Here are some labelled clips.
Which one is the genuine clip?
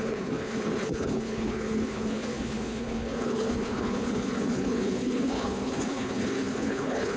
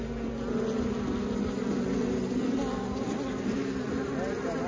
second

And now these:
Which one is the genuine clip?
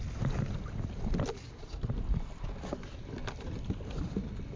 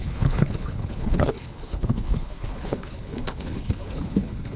first